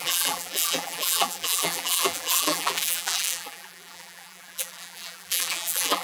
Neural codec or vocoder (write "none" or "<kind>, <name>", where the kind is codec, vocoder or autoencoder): vocoder, BigVGAN v2